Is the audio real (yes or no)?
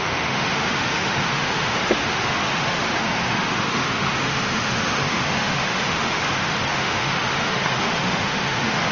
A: no